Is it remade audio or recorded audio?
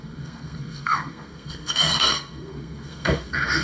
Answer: remade